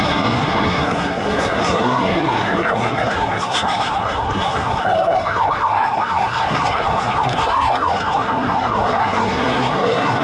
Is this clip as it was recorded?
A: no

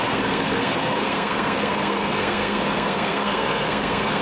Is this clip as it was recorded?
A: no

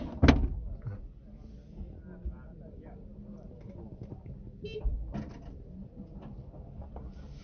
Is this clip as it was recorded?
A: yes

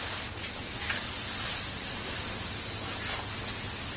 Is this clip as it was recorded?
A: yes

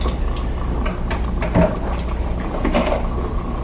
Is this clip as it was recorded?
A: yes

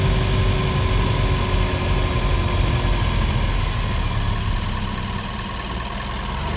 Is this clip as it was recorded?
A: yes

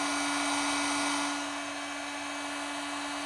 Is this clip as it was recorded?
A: yes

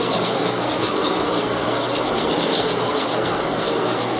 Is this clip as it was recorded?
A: no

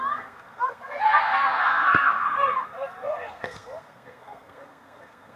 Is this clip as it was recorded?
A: no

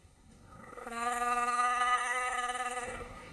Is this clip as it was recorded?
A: no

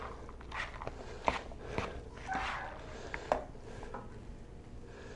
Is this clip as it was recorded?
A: yes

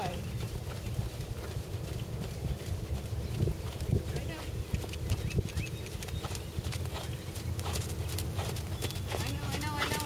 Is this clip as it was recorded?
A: yes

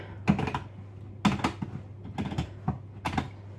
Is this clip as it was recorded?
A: yes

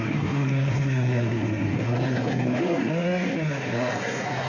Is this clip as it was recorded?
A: no